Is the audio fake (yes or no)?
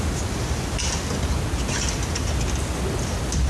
no